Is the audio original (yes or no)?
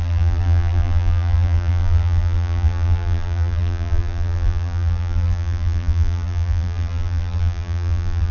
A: no